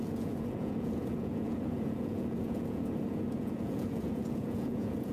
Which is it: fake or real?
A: fake